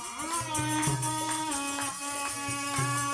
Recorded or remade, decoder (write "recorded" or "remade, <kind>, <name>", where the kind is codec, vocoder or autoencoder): recorded